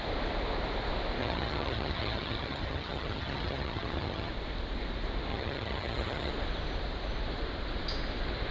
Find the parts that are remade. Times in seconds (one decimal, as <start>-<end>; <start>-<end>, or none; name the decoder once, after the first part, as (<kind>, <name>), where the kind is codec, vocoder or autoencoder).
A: 1.2-4.3 (vocoder, HiFi-GAN); 5.3-6.3